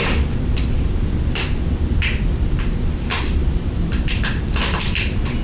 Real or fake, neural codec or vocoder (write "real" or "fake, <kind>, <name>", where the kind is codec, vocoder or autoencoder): real